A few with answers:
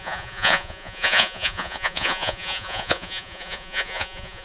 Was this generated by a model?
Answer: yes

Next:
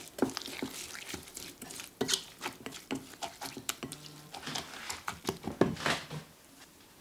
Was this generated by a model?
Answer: no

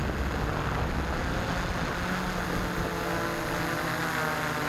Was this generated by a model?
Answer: no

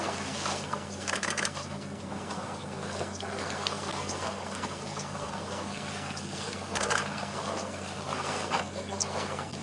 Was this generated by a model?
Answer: yes